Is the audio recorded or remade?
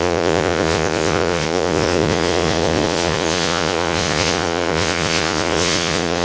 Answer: remade